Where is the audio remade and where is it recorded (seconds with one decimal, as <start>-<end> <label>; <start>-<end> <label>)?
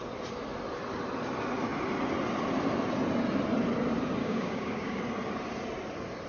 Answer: 0.0-4.2 recorded; 4.2-5.0 remade; 5.0-6.3 recorded